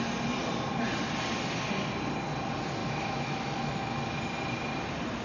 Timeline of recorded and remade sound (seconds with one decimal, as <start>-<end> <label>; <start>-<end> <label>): 0.0-2.8 recorded; 2.8-4.2 remade; 4.2-5.2 recorded